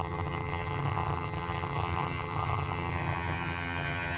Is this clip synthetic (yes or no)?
yes